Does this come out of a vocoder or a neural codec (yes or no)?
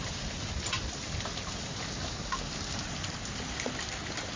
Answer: no